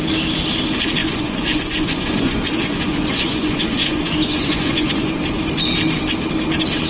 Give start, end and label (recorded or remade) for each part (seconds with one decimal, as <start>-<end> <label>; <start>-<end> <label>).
0.0-1.0 recorded; 1.0-5.1 remade; 5.1-6.9 recorded